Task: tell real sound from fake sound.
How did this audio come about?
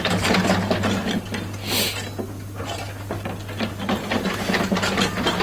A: real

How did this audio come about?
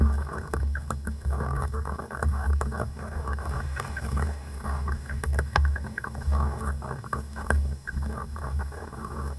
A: fake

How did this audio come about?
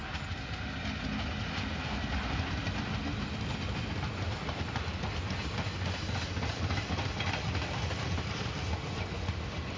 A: real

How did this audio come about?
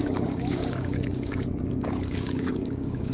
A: fake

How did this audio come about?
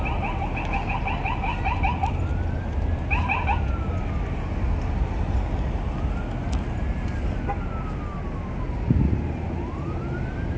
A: real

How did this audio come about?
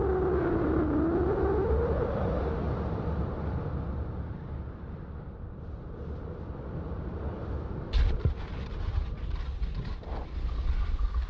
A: real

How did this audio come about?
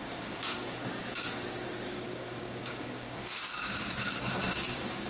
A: fake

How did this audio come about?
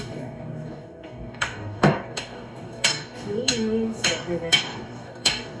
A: fake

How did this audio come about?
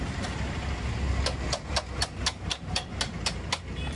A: real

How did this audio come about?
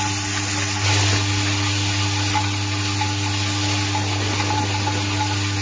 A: real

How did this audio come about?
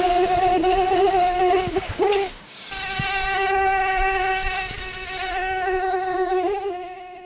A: fake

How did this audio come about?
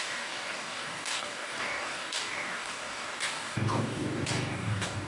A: fake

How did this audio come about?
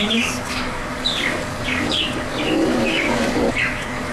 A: fake